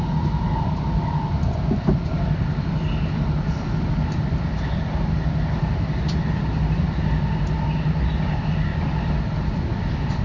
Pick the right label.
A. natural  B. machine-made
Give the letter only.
A